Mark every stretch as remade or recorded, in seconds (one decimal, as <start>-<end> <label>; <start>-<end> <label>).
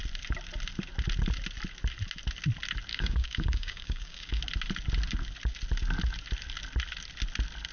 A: 0.0-2.9 recorded; 2.9-4.4 remade; 4.4-7.7 recorded